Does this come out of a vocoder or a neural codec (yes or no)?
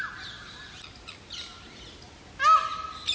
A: no